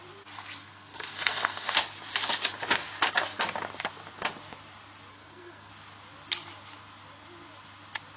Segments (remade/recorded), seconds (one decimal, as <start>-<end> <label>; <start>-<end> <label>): 0.0-0.6 recorded; 0.6-1.7 remade; 1.7-5.1 recorded; 5.1-5.7 remade; 5.7-8.2 recorded